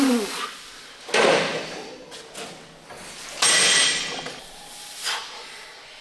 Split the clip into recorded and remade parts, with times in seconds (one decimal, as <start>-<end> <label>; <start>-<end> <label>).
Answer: 0.0-6.0 recorded